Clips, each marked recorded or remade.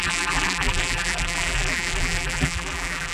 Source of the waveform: remade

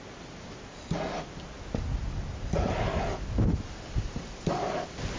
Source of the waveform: recorded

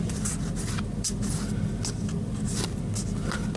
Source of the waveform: recorded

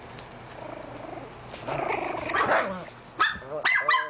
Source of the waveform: recorded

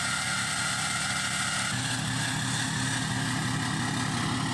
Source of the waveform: recorded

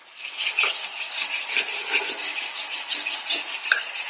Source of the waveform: recorded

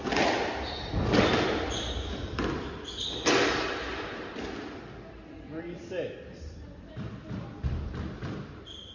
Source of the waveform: recorded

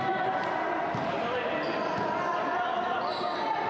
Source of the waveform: recorded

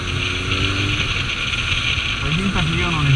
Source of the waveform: recorded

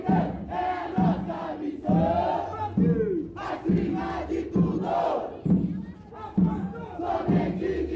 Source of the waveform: recorded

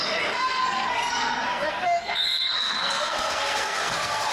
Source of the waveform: remade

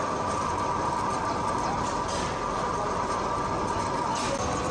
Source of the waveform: recorded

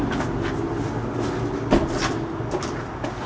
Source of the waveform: recorded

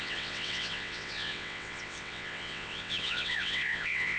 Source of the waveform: remade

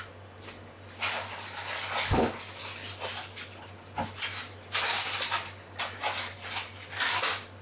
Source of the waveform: recorded